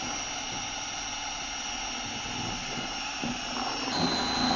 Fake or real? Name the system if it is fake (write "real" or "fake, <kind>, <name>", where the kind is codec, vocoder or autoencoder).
real